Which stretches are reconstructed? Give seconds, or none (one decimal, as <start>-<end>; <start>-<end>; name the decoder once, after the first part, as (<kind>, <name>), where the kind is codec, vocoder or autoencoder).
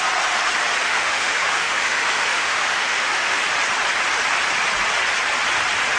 0.8-3.4 (autoencoder, DAC-VAE)